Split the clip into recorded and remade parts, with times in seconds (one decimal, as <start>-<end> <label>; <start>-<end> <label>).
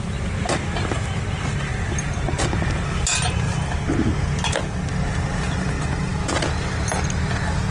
0.0-7.7 recorded